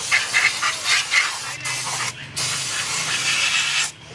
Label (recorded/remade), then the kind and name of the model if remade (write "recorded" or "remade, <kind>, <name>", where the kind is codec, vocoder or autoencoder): recorded